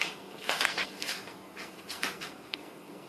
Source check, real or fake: fake